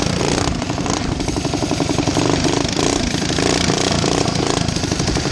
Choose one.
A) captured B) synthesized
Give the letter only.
B